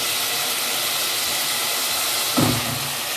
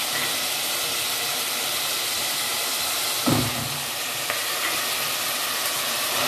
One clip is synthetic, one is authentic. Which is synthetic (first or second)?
second